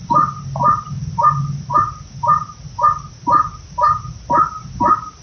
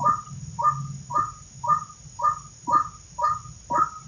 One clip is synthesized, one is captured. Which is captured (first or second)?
second